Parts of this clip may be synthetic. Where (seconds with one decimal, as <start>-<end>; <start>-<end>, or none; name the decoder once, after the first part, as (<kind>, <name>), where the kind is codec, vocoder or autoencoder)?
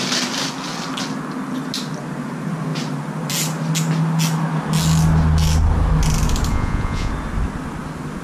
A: 6.5-7.1 (vocoder, Vocos)